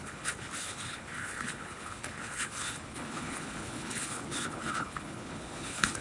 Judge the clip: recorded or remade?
remade